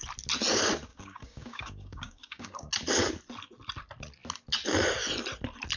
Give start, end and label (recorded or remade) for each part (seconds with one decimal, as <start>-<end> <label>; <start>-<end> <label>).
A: 0.0-0.9 recorded; 0.9-2.7 remade; 2.7-5.8 recorded